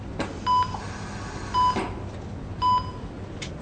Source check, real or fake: real